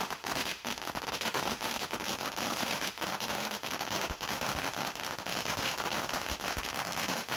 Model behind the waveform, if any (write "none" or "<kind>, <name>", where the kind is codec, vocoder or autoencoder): autoencoder, DAC-VAE